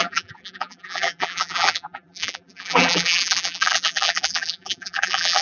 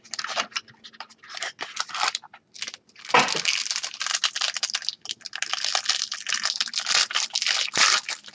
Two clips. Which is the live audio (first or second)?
second